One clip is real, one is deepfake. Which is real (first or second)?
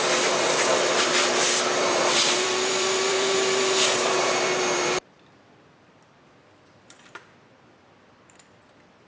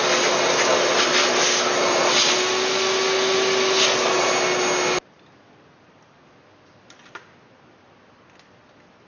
second